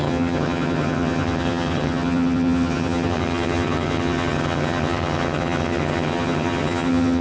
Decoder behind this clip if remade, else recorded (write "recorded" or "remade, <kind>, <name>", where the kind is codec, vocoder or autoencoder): remade, vocoder, HiFi-GAN